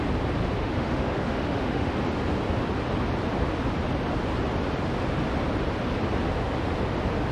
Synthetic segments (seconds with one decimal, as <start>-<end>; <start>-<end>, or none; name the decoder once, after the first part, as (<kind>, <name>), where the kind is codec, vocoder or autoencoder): 0.6-1.9 (autoencoder, DAC-VAE)